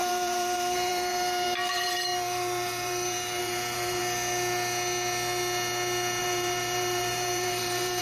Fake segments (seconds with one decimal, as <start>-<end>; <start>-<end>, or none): 0.0-4.0; 6.2-8.0

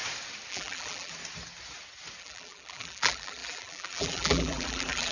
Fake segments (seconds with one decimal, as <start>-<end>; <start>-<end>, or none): 0.5-1.1; 2.2-5.1